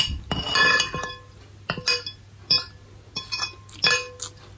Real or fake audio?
real